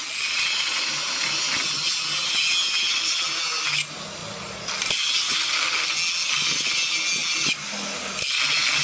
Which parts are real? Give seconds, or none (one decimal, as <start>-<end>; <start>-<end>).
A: 0.0-8.8